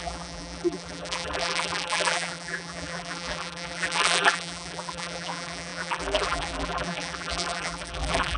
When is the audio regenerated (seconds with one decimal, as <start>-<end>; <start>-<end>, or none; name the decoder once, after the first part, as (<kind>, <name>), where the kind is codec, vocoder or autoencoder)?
0.0-8.4 (vocoder, BigVGAN v2)